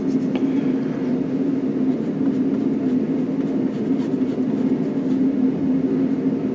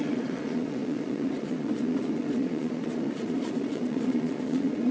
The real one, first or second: first